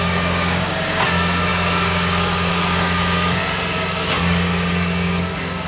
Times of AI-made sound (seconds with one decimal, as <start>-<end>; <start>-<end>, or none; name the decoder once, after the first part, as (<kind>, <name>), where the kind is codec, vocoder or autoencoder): 0.0-3.4 (codec, DAC); 4.0-5.7

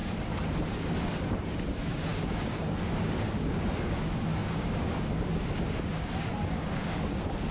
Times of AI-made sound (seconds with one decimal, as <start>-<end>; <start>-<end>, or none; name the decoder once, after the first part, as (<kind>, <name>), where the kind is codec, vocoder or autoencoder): 1.4-7.5 (codec, DAC)